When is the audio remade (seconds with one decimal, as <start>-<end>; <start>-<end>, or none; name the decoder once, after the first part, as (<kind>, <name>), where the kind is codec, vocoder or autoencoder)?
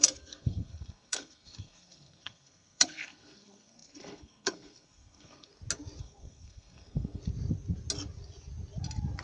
0.0-5.5 (codec, SNAC); 6.0-7.2